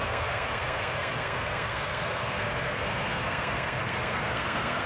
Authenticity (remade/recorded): remade